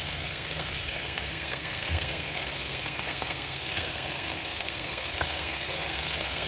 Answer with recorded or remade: remade